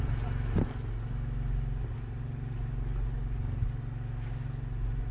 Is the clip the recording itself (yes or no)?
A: yes